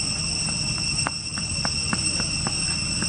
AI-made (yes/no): no